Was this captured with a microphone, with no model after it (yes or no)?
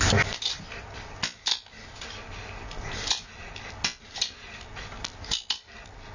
yes